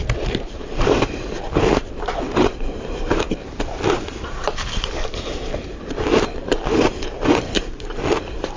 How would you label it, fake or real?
fake